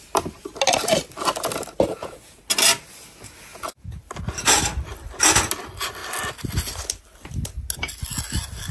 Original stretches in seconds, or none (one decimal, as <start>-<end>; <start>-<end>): 0.0-1.9; 2.4-3.5; 4.0-8.7